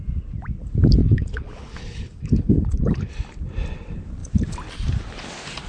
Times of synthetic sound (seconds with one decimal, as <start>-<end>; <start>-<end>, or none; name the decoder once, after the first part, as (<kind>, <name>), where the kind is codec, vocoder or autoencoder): 1.0-3.1 (codec, HILCodec)